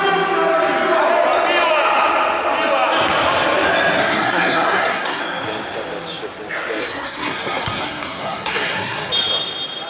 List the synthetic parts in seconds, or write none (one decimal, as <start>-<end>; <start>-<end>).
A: 4.0-5.2; 6.8-9.1